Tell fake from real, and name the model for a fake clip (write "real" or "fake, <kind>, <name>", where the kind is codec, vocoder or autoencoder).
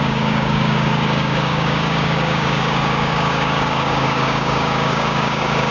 fake, codec, DAC